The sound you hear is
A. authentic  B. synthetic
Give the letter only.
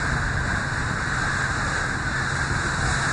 A